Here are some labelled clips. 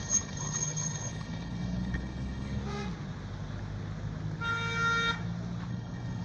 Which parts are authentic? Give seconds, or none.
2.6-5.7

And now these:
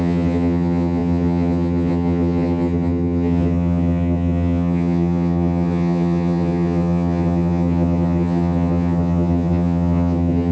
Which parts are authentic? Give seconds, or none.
none

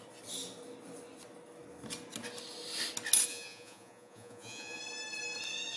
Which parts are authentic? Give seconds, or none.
0.0-3.3; 4.8-5.8

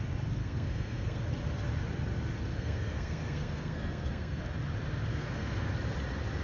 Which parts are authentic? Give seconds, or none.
0.0-0.4; 1.2-2.5; 4.4-5.1; 5.7-6.4

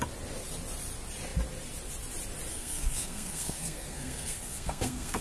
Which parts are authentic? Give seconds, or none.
0.0-2.5

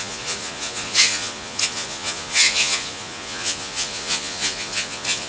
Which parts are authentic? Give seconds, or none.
none